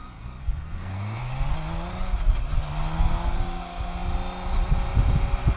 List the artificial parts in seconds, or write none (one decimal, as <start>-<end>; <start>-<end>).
0.0-1.2